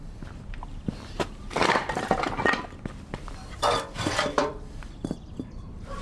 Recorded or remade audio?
remade